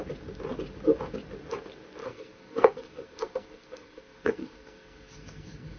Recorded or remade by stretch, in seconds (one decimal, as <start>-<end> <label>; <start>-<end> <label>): 0.0-2.0 recorded; 2.0-5.8 remade